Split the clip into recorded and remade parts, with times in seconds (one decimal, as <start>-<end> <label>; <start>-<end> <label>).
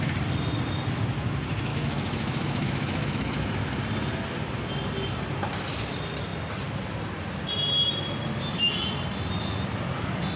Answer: 0.0-1.7 recorded; 1.7-3.5 remade; 3.5-10.4 recorded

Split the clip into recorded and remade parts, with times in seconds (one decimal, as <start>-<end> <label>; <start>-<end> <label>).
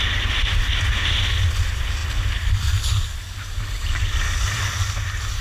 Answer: 0.0-5.4 recorded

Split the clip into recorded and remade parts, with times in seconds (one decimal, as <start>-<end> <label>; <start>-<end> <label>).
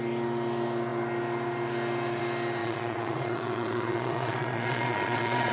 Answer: 0.0-2.6 recorded; 2.6-5.5 remade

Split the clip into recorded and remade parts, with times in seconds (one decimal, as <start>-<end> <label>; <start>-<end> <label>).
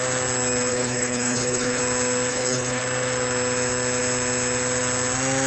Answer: 0.0-0.7 recorded; 0.7-1.8 remade; 1.8-2.3 recorded; 2.3-2.8 remade; 2.8-5.5 recorded